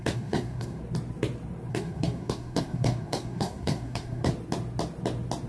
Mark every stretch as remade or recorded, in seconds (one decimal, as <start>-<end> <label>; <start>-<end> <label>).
0.0-0.8 remade; 0.8-1.7 recorded; 1.7-4.3 remade; 4.3-5.5 recorded